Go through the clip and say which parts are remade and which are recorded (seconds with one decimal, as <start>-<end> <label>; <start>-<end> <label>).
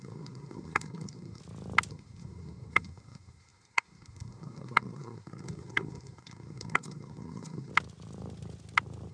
0.0-1.4 remade; 1.4-1.9 recorded; 1.9-7.7 remade; 7.7-9.1 recorded